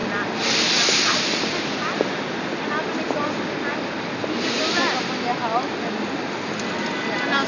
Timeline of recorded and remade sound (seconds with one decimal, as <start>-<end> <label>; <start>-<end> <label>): 0.0-7.5 recorded